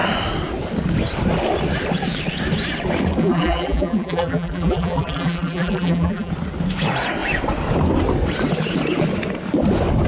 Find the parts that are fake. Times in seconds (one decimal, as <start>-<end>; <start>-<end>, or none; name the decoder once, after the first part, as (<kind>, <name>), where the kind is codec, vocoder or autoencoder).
3.2-6.3 (vocoder, BigVGAN v2)